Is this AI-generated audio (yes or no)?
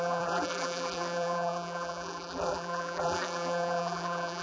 yes